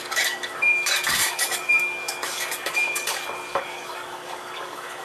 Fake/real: fake